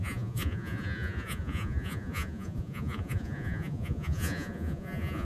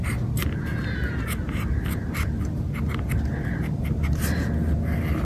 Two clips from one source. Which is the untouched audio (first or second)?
second